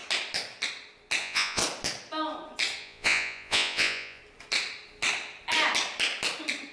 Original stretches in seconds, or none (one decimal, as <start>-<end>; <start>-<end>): 0.0-1.2; 1.6-2.8; 4.2-6.7